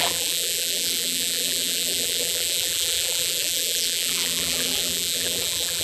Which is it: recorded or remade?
remade